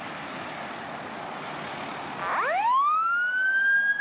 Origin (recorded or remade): recorded